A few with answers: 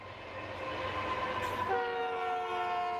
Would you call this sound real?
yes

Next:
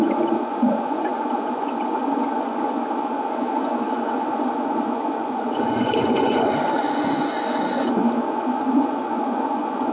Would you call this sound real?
no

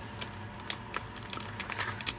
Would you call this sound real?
yes